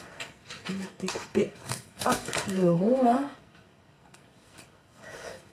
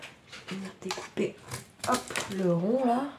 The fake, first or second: first